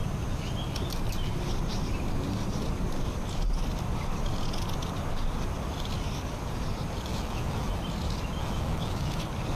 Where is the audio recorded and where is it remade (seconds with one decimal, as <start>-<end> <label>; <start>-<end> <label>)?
0.0-7.1 recorded; 7.1-7.8 remade; 7.8-8.4 recorded; 8.4-9.2 remade; 9.2-9.6 recorded